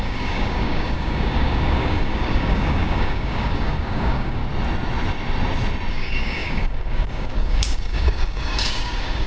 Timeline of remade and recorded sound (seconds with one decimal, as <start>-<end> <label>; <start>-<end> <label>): 0.0-4.4 remade; 4.4-5.9 recorded; 5.9-9.3 remade